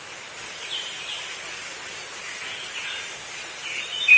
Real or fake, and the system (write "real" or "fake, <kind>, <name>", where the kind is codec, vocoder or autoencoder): real